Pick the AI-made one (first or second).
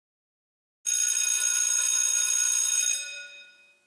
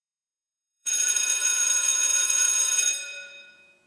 second